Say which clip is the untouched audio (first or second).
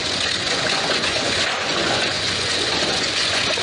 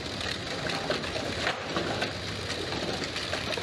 second